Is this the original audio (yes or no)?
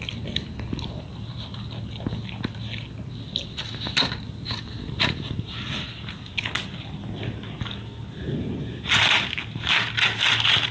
yes